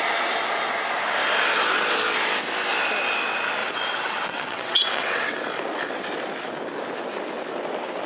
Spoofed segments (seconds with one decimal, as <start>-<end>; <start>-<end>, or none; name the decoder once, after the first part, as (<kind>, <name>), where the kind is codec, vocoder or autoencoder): 3.6-5.4 (vocoder, WaveNeXt)